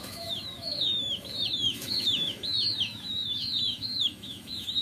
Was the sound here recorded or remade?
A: remade